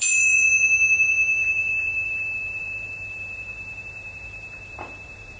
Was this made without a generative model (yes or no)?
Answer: no